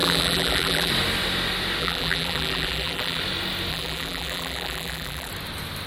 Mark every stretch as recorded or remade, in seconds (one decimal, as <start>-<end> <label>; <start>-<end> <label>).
0.0-0.9 remade; 0.9-1.8 recorded; 1.8-3.2 remade; 3.2-3.7 recorded; 3.7-5.3 remade; 5.3-5.9 recorded